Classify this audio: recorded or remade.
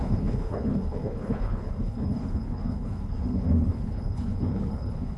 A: remade